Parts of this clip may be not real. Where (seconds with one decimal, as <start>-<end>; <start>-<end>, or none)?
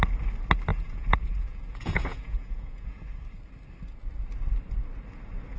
0.7-3.0